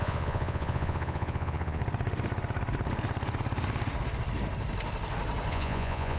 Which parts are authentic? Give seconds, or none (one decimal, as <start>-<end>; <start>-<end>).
1.8-5.5